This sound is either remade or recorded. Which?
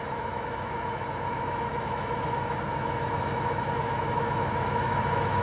remade